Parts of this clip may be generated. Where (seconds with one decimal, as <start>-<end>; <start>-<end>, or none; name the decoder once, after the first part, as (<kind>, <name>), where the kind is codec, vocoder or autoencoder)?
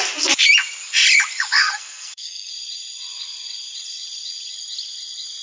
1.6-2.5 (codec, SNAC)